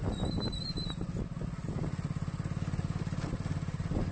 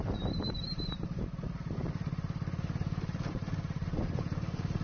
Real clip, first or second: first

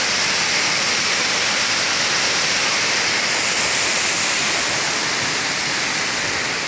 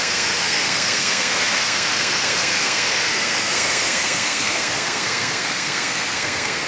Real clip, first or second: first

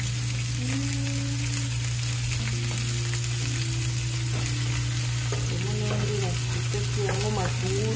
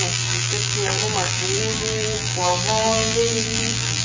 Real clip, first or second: first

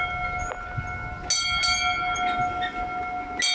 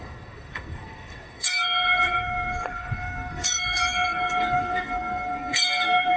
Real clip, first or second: first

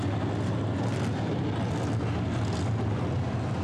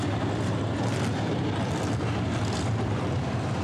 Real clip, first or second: first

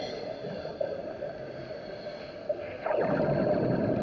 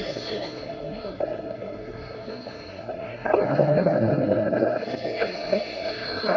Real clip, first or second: first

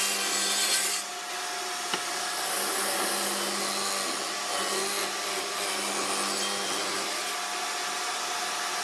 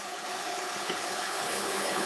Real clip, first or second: first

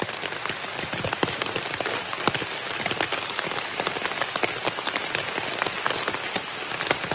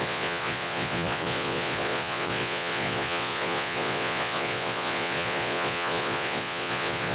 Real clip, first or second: first